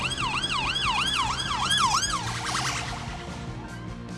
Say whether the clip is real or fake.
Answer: real